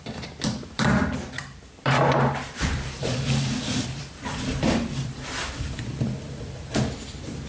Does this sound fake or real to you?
fake